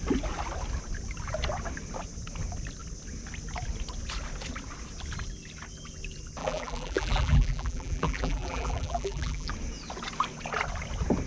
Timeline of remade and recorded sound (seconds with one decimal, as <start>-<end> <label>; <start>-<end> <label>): 0.0-6.4 recorded; 6.4-9.5 remade; 9.5-11.3 recorded